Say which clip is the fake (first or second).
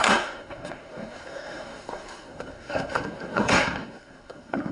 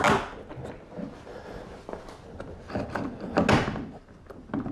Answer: first